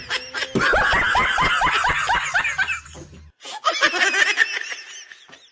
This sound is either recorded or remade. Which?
recorded